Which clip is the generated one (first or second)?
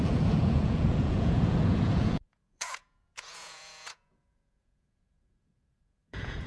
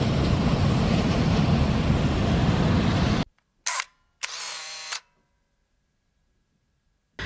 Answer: first